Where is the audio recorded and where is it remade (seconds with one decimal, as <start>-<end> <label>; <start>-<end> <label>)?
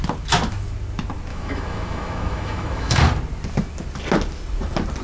0.0-1.3 recorded; 1.3-3.0 remade; 3.0-5.0 recorded